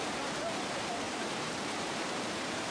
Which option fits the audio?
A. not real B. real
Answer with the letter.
A